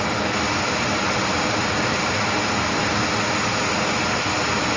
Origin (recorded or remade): recorded